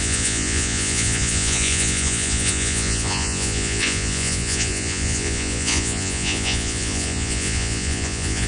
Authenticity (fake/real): fake